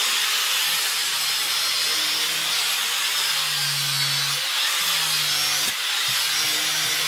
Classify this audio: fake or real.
real